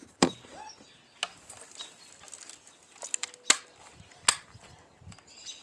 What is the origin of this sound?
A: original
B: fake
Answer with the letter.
A